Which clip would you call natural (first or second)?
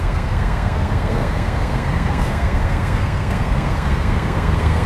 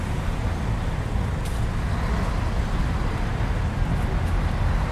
second